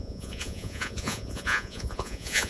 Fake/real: fake